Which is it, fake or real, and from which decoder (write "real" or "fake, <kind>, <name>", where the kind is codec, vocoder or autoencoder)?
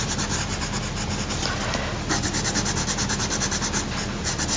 real